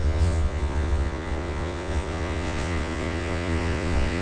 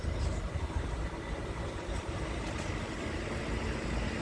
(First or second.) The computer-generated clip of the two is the first